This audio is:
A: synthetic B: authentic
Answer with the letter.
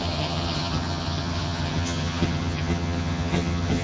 A